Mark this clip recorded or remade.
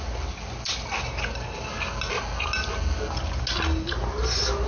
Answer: recorded